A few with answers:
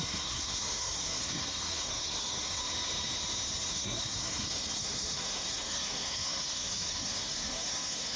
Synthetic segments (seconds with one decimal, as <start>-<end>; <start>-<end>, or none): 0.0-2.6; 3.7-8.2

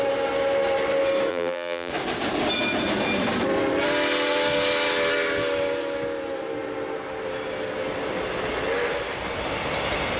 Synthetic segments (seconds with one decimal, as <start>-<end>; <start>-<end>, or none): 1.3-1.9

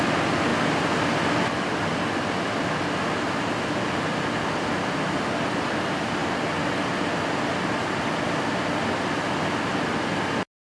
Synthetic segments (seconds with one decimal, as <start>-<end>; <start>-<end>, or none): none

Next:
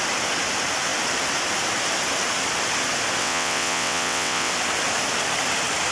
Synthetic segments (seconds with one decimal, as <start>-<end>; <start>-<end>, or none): 3.2-4.5